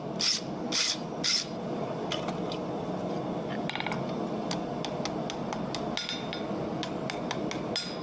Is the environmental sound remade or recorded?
recorded